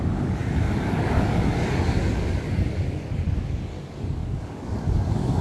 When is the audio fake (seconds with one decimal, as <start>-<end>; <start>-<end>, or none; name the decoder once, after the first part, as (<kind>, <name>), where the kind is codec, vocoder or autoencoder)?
0.0-5.4 (codec, DAC)